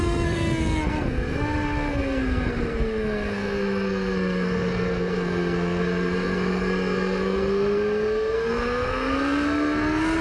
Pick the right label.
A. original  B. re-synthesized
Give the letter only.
B